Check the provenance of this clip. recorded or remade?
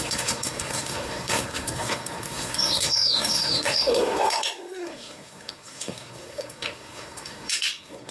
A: remade